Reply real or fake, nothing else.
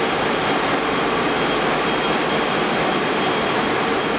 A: real